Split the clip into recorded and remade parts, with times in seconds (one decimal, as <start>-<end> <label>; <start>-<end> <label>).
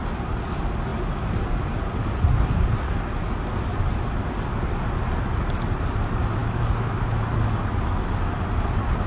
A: 0.0-6.4 recorded; 6.4-7.2 remade; 7.2-9.1 recorded